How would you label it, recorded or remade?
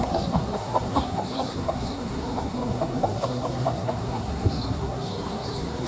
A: remade